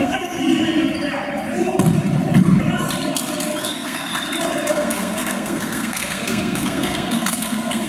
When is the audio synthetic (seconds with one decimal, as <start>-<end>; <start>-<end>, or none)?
0.0-0.4; 3.6-4.1; 4.7-7.9